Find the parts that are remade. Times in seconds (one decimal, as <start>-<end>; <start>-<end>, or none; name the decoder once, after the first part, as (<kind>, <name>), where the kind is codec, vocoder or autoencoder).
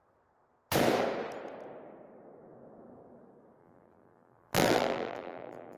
3.6-5.8 (vocoder, BigVGAN v2)